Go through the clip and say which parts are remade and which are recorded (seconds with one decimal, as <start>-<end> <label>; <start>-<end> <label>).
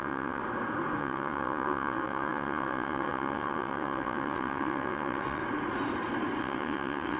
0.0-0.4 remade; 0.4-1.0 recorded; 1.0-5.4 remade; 5.4-6.4 recorded; 6.4-7.2 remade